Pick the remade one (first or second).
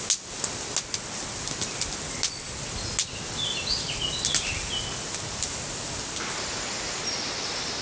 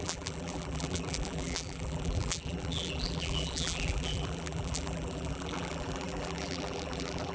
second